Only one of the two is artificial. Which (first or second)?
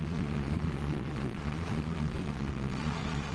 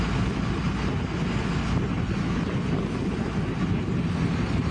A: first